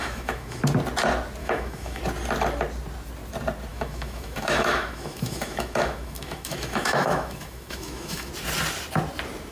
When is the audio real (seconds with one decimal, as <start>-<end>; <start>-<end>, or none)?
0.6-1.4; 2.0-3.7; 8.3-9.5